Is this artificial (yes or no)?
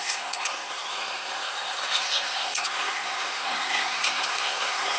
yes